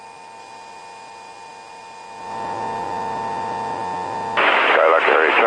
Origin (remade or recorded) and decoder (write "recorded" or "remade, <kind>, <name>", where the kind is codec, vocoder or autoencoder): recorded